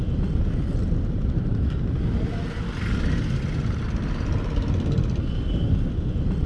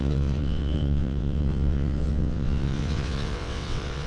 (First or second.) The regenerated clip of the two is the second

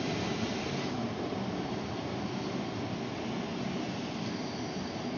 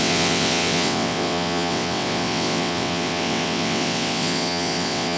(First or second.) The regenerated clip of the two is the second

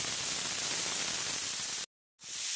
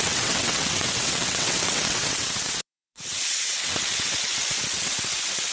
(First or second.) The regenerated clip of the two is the second